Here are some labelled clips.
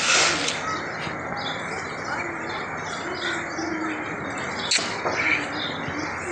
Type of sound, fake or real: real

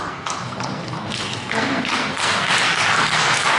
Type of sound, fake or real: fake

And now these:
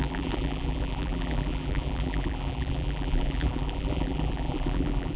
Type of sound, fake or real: fake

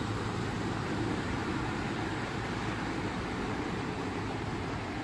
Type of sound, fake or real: fake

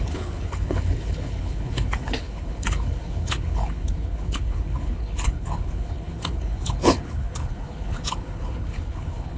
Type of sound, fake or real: fake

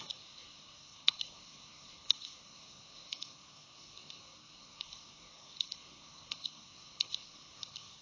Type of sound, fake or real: fake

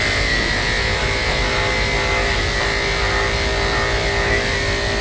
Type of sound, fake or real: real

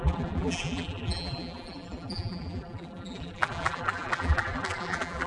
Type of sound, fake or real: fake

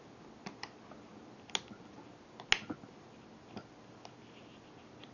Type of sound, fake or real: real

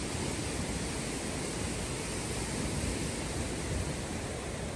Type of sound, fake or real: real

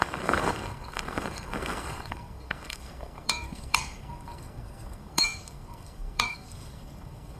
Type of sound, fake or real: fake